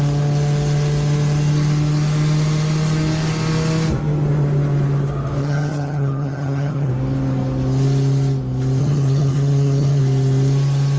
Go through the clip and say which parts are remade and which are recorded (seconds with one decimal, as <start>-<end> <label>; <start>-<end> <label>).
0.0-5.4 recorded; 5.4-6.9 remade; 6.9-8.8 recorded; 8.8-10.0 remade; 10.0-11.0 recorded